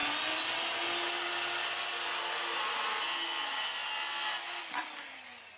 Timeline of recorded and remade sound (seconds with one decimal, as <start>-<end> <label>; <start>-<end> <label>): 0.0-5.6 recorded